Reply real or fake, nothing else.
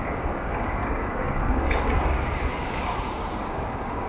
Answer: fake